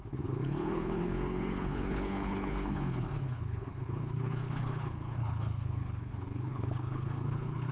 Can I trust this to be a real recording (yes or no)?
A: no